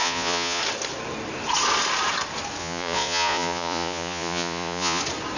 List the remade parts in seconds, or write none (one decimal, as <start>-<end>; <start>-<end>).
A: 0.0-0.6; 2.6-5.0